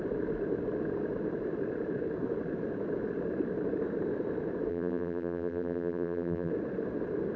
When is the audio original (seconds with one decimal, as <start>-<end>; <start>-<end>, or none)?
0.0-4.7; 6.5-7.4